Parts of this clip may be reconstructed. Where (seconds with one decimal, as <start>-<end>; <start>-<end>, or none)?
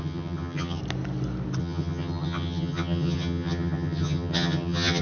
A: 0.0-0.8; 1.6-5.0